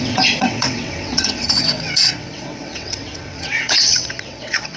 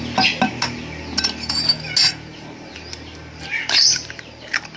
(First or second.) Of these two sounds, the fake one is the first